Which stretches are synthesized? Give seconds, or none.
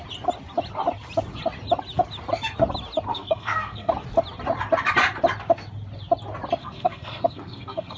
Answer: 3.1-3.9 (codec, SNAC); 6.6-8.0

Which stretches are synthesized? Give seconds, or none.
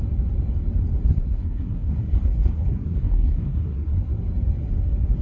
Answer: 1.1-4.1 (codec, SNAC)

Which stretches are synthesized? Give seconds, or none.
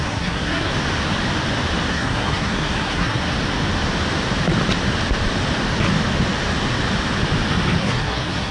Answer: 0.0-0.7 (codec, SNAC); 1.9-3.3; 7.8-8.5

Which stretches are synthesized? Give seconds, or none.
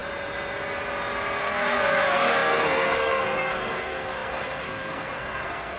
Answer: 1.4-5.8 (codec, SNAC)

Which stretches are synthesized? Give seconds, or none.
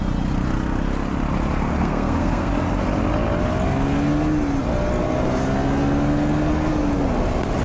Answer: 1.8-2.5 (codec, SNAC)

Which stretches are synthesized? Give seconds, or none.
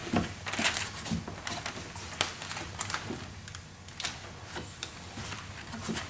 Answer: none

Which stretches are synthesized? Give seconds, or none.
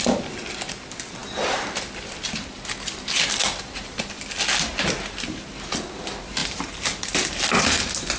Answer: none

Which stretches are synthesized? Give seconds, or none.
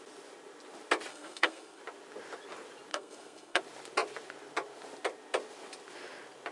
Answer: 1.1-1.8 (codec, SNAC); 2.9-3.6